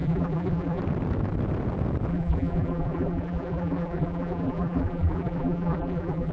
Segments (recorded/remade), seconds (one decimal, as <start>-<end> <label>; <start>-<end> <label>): 0.0-0.8 remade; 0.8-2.1 recorded; 2.1-6.3 remade